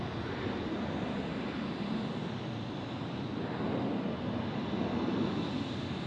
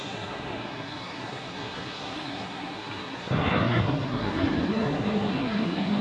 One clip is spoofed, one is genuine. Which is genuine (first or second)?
first